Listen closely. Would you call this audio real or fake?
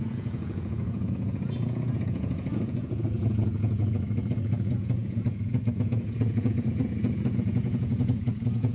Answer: fake